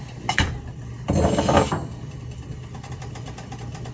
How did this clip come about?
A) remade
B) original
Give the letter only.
B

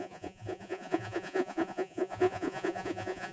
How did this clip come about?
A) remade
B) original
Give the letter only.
A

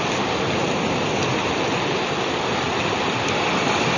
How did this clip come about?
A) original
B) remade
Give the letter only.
A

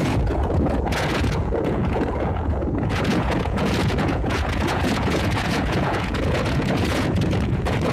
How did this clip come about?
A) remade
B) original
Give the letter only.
A